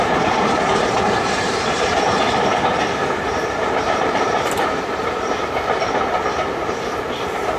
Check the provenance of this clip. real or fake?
fake